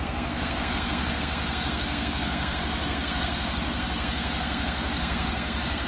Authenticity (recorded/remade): remade